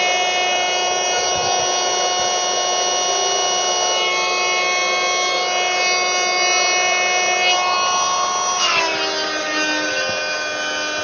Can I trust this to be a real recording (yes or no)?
yes